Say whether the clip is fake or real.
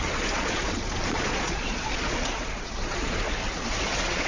fake